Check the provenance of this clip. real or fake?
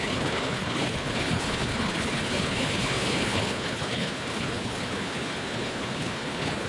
fake